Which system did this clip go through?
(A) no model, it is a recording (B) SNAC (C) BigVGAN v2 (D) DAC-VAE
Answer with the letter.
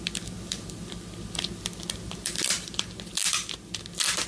A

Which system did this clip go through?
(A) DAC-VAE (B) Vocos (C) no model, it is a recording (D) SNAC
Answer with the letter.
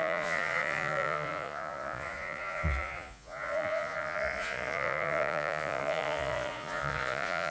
B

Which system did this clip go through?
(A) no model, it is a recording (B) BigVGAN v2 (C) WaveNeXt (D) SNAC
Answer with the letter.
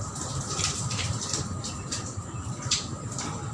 B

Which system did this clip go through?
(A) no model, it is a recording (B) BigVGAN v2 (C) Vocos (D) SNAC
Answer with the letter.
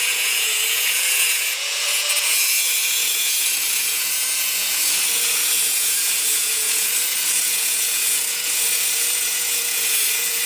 C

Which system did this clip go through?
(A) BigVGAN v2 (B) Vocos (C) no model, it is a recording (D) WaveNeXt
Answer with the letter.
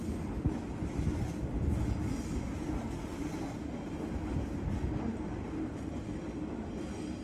C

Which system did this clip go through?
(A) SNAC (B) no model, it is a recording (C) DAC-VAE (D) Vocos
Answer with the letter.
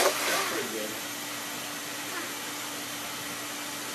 B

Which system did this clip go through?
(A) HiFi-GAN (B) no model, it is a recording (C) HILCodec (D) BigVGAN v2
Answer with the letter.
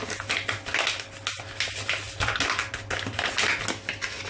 B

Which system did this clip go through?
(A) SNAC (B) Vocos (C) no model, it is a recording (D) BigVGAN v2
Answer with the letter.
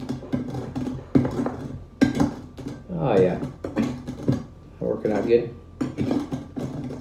C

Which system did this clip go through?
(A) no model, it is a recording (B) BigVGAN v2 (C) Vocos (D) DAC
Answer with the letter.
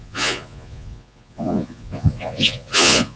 C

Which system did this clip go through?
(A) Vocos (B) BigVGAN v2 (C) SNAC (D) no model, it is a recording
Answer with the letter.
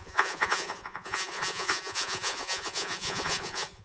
A